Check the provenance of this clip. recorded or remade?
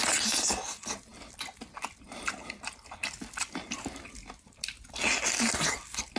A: recorded